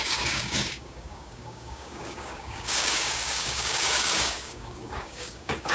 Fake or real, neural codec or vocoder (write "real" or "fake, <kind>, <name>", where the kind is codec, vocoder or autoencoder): fake, codec, DAC